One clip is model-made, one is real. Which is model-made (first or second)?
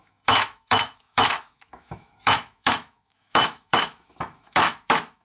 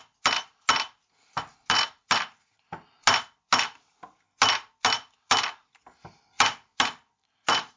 first